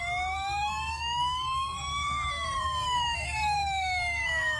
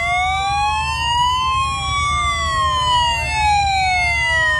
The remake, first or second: first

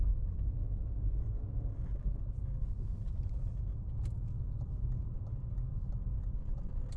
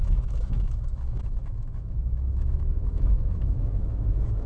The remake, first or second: second